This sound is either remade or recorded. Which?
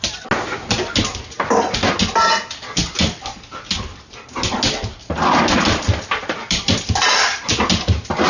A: recorded